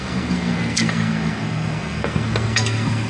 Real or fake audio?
fake